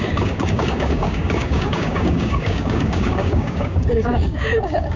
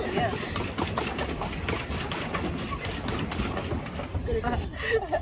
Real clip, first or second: second